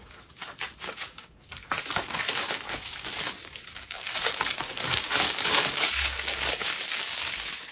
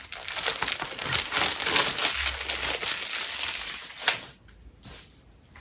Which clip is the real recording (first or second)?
second